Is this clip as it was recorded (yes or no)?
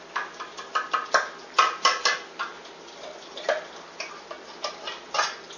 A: yes